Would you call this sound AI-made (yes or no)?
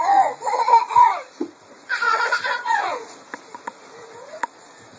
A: yes